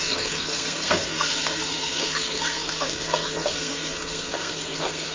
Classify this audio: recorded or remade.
remade